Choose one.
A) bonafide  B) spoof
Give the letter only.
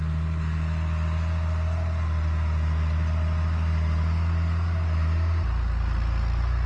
A